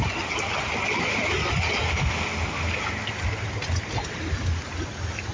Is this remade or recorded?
recorded